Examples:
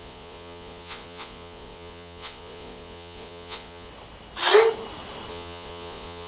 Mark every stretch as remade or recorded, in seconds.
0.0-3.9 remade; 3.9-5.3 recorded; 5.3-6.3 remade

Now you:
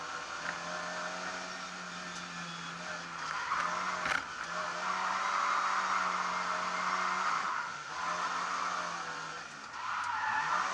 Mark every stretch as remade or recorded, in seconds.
0.0-7.3 recorded; 7.3-7.9 remade; 7.9-10.7 recorded

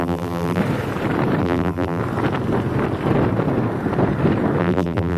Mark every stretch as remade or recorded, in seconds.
0.0-0.6 remade; 0.6-1.4 recorded; 1.4-2.0 remade; 2.0-4.6 recorded; 4.6-5.2 remade

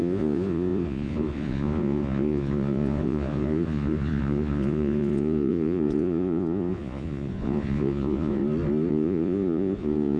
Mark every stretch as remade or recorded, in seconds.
0.0-8.4 remade; 8.4-8.9 recorded; 8.9-10.2 remade

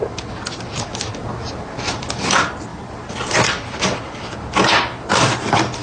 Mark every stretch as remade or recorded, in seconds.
0.0-2.7 recorded; 2.7-3.8 remade; 3.8-5.8 recorded

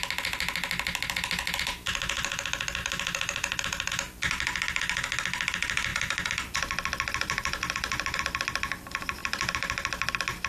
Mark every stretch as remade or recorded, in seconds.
0.0-2.8 recorded; 2.8-4.2 remade; 4.2-5.9 recorded; 5.9-8.2 remade; 8.2-9.2 recorded; 9.2-10.1 remade; 10.1-10.5 recorded